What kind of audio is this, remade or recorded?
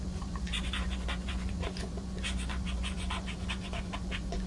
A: remade